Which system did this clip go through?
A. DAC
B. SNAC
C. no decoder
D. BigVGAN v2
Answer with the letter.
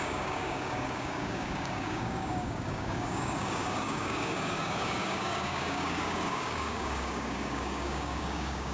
A